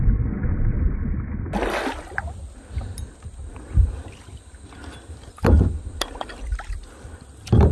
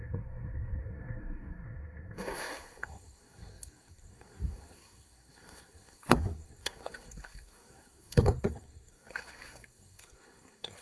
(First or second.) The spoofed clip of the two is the second